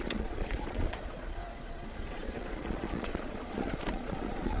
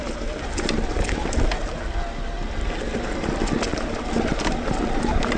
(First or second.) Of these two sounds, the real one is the second